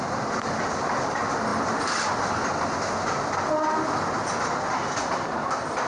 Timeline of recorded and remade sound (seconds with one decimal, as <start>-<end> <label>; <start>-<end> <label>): 0.0-5.9 recorded